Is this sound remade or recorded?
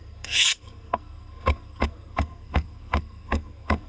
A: remade